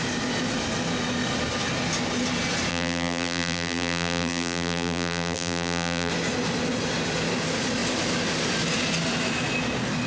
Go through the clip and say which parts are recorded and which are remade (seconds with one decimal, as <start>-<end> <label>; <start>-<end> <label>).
0.0-2.7 recorded; 2.7-6.1 remade; 6.1-10.1 recorded